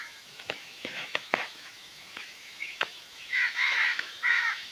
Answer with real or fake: fake